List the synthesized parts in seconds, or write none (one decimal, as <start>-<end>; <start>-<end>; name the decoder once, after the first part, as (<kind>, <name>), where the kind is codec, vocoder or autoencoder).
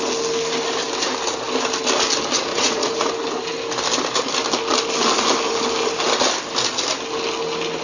2.5-3.1 (vocoder, Vocos)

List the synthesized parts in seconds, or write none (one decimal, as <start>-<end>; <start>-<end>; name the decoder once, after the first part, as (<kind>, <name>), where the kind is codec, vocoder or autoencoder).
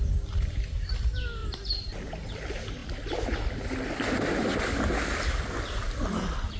1.4-2.0 (vocoder, BigVGAN v2)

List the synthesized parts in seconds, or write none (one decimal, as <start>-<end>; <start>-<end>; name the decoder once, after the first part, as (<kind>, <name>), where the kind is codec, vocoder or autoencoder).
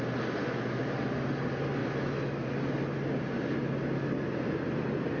0.4-1.0 (autoencoder, DAC-VAE)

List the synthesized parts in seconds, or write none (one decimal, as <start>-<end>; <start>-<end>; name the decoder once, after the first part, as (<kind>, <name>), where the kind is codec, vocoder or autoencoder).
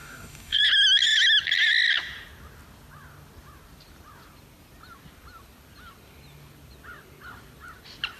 0.0-0.6 (codec, DAC)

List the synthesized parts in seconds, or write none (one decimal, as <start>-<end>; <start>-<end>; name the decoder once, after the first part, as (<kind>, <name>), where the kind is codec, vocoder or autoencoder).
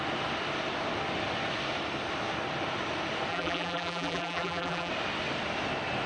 3.3-4.9 (vocoder, BigVGAN v2)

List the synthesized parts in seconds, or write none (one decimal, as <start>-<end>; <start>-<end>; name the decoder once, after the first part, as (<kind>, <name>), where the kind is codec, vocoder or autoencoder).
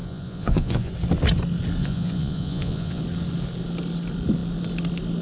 0.0-0.9 (vocoder, Vocos); 1.8-3.0